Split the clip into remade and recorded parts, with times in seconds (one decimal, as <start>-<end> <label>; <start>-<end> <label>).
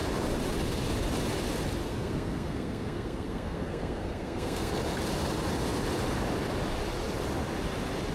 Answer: 0.0-1.8 recorded; 1.8-4.7 remade; 4.7-8.1 recorded